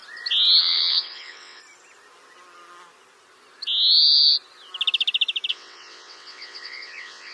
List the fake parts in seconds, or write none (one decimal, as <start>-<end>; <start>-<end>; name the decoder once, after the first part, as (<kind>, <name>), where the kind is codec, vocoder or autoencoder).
0.6-1.6 (vocoder, WaveNeXt); 5.5-7.3